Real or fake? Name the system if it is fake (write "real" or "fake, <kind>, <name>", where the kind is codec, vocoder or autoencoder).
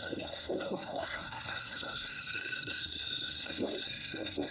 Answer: fake, codec, SNAC